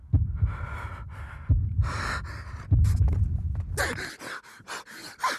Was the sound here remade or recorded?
recorded